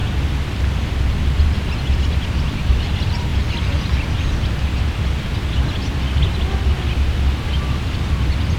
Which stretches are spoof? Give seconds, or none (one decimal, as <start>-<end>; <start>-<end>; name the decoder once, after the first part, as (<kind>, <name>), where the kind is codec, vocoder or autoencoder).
none